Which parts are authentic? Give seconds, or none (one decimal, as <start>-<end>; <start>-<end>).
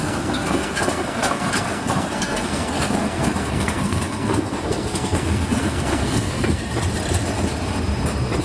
6.7-8.4